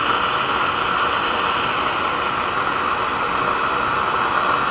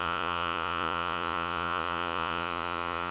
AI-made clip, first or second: second